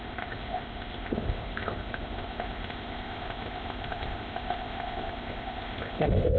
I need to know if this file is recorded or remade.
remade